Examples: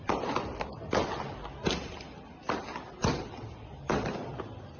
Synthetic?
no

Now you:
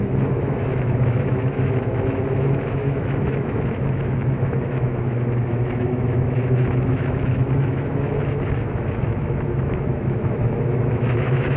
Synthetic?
yes